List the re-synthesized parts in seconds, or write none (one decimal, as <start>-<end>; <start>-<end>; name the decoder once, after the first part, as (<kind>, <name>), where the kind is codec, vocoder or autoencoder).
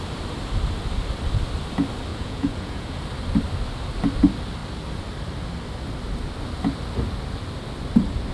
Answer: 2.1-3.0 (vocoder, Vocos)